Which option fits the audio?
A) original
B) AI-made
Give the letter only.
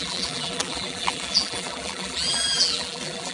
B